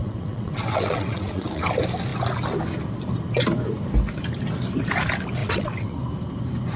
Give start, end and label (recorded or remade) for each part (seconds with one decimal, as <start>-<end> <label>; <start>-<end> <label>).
0.0-1.7 remade; 1.7-5.4 recorded; 5.4-6.0 remade; 6.0-6.8 recorded